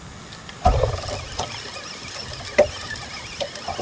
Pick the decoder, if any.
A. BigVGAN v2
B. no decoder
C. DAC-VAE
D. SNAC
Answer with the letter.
B